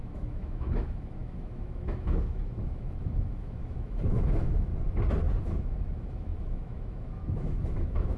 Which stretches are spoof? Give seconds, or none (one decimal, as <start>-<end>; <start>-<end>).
0.0-4.7; 5.4-8.2